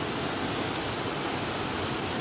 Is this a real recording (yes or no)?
yes